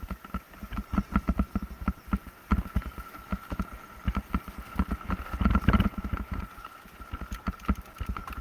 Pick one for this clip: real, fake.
real